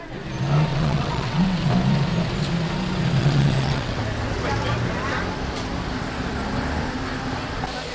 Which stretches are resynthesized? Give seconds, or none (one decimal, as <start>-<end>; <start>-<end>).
0.7-1.7; 3.2-4.0